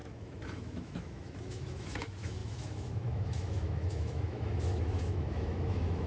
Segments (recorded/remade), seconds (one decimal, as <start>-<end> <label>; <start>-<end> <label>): 0.0-6.1 remade

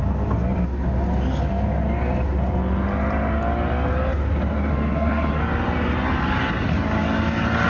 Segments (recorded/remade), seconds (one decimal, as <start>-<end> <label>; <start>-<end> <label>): 0.0-4.7 recorded; 4.7-5.4 remade; 5.4-7.7 recorded

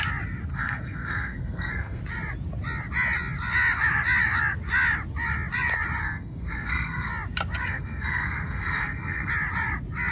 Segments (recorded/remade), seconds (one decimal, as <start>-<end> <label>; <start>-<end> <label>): 0.0-0.5 recorded; 0.5-2.0 remade; 2.0-6.0 recorded; 6.0-7.1 remade; 7.1-7.7 recorded; 7.7-9.3 remade; 9.3-10.1 recorded

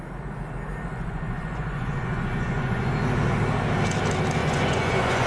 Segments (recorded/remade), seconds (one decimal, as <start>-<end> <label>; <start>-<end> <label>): 0.0-0.9 recorded; 0.9-2.9 remade; 2.9-4.4 recorded; 4.4-5.3 remade